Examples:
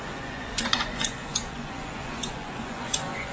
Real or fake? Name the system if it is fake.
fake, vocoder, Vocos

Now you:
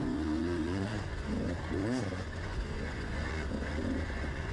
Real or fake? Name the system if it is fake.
fake, vocoder, Vocos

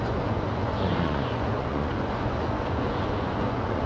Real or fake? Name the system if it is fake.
fake, vocoder, Vocos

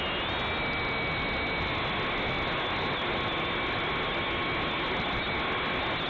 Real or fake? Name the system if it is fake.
real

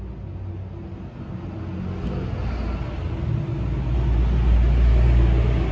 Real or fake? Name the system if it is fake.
real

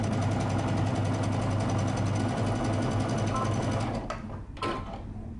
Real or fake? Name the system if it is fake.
real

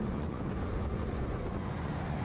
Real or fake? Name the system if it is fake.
fake, vocoder, Vocos